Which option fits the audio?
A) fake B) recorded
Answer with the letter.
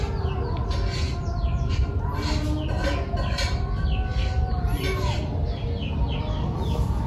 B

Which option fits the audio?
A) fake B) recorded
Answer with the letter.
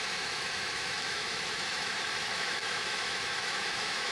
A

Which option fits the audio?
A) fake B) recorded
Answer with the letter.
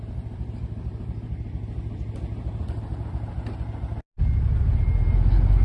B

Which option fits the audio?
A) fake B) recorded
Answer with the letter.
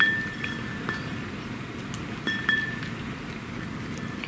B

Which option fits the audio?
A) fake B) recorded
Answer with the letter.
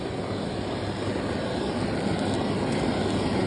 B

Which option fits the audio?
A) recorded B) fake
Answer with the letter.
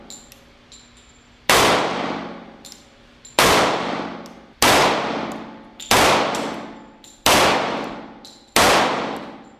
A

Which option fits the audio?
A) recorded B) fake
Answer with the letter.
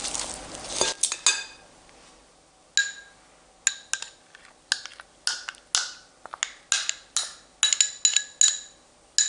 A